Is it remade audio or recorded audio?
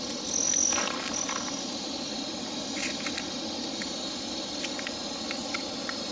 recorded